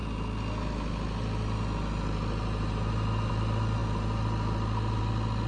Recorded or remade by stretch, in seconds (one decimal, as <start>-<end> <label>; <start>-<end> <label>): 0.0-5.5 recorded